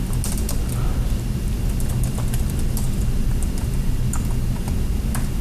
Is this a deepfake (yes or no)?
no